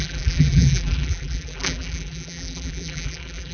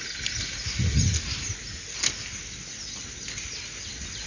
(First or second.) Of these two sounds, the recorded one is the second